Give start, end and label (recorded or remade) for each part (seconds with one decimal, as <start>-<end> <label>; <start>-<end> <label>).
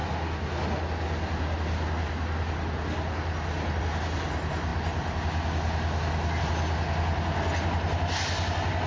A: 0.0-8.9 recorded